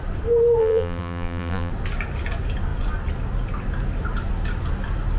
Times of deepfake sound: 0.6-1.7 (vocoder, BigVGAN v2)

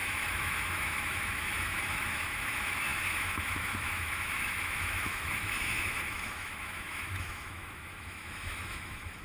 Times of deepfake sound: 0.0-9.2 (autoencoder, DAC-VAE)